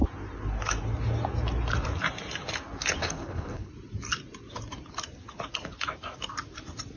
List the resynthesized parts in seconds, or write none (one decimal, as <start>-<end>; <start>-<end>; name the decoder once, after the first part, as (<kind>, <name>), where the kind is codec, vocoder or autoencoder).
3.0-3.7 (codec, HILCodec)